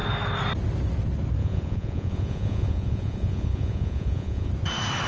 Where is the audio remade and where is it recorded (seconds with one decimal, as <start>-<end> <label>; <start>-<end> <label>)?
0.0-1.4 recorded; 1.4-4.5 remade; 4.5-5.1 recorded